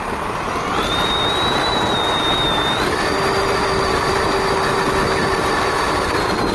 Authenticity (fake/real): real